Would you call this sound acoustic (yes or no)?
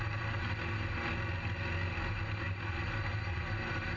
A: yes